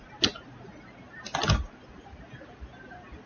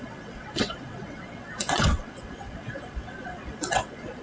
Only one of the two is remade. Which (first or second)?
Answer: second